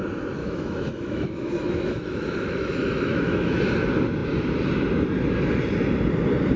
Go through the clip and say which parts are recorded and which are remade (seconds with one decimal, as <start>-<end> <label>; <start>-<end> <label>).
0.0-0.4 recorded; 0.4-3.6 remade; 3.6-6.6 recorded